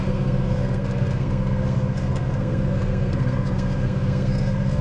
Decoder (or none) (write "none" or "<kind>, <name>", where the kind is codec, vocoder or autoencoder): codec, SNAC